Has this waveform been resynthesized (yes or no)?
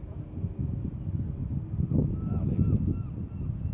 no